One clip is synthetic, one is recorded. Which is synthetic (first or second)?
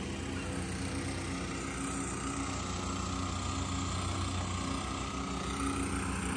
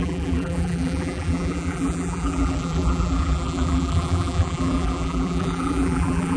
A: second